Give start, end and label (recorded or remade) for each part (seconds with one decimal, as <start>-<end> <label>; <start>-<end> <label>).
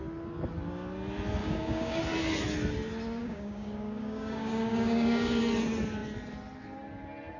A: 0.0-1.4 recorded; 1.4-2.0 remade; 2.0-3.2 recorded; 3.2-5.4 remade; 5.4-7.4 recorded